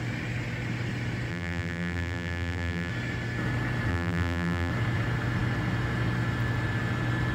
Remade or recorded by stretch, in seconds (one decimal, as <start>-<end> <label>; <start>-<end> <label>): 0.0-1.3 recorded; 1.3-2.9 remade; 2.9-3.9 recorded; 3.9-4.7 remade; 4.7-7.3 recorded